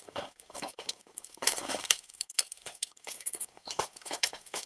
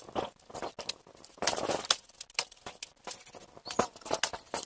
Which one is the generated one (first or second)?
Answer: first